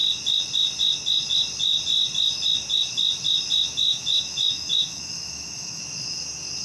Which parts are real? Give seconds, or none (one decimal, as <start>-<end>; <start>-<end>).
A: 0.0-3.9; 5.8-6.6

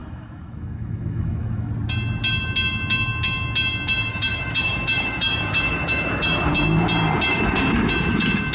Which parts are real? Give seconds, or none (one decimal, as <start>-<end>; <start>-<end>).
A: 1.7-4.1; 6.5-7.3; 7.9-8.5

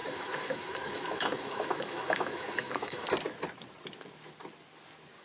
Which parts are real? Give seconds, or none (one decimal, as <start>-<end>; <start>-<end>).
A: 3.1-5.2

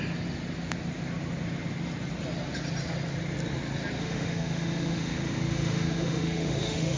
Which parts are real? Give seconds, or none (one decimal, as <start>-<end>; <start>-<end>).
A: 0.0-4.0

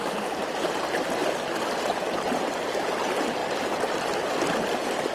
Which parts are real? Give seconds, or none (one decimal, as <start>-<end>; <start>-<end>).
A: 0.0-5.1

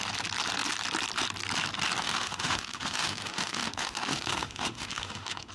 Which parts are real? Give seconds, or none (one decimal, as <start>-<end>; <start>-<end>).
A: 0.0-2.0